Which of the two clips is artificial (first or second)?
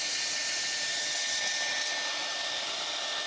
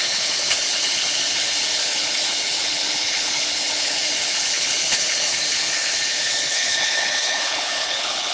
second